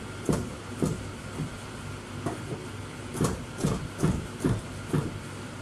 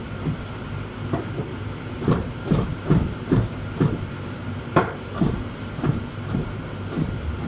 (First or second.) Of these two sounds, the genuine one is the first